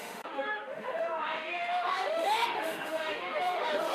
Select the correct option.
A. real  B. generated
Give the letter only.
B